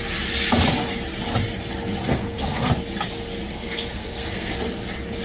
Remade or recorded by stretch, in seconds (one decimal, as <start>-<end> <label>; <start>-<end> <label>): 0.0-2.1 recorded; 2.1-2.7 remade; 2.7-3.5 recorded; 3.5-4.5 remade; 4.5-5.2 recorded